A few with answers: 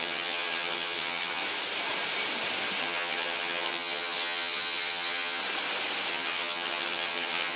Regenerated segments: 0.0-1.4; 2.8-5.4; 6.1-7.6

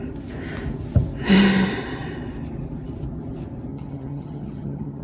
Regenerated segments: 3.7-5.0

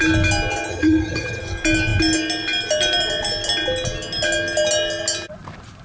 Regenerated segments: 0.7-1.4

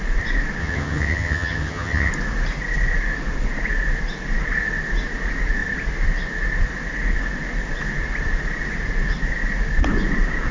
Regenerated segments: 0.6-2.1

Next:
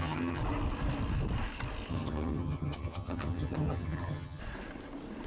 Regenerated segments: 0.0-0.4; 1.9-4.4